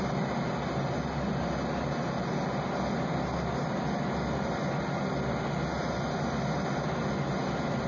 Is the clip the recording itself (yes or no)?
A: yes